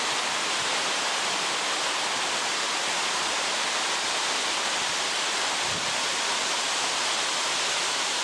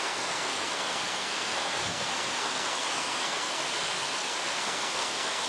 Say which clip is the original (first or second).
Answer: first